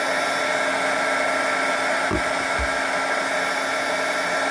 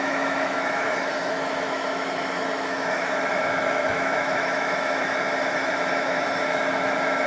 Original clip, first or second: first